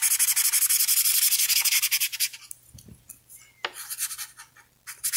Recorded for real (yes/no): yes